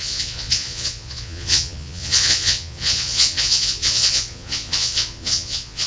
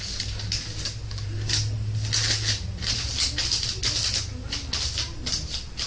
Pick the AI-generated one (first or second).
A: first